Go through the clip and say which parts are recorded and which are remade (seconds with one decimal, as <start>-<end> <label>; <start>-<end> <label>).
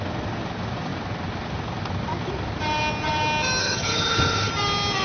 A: 0.0-3.6 recorded; 3.6-4.5 remade; 4.5-5.0 recorded